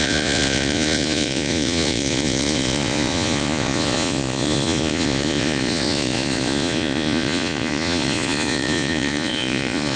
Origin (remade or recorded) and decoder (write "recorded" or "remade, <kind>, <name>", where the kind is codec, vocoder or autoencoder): remade, vocoder, Vocos